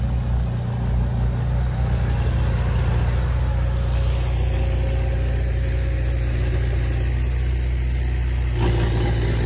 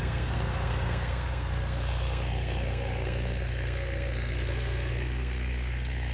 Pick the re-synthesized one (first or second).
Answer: second